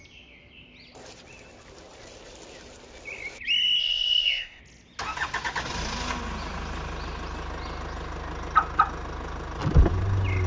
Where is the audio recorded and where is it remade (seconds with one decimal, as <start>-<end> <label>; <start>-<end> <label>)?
0.0-3.8 recorded; 3.8-4.6 remade; 4.6-10.5 recorded